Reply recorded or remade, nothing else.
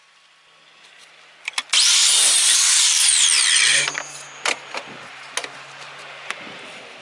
recorded